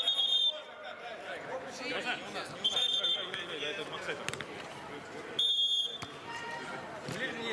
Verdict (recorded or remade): recorded